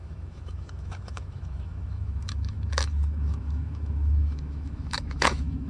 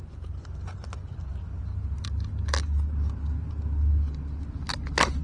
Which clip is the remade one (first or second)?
first